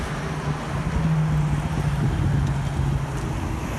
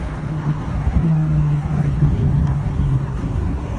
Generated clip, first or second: second